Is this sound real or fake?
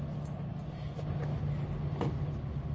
real